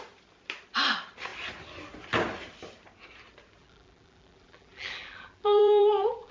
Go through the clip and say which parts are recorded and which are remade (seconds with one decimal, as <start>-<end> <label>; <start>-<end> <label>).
0.0-3.6 recorded; 3.6-6.3 remade